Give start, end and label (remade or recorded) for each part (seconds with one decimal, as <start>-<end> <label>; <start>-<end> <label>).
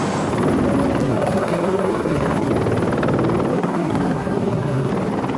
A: 0.0-1.0 recorded; 1.0-2.5 remade; 2.5-3.5 recorded; 3.5-4.9 remade; 4.9-5.4 recorded